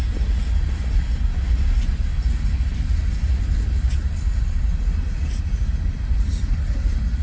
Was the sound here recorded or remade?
recorded